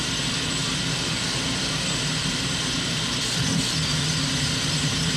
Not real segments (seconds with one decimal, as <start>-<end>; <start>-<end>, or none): 0.6-3.6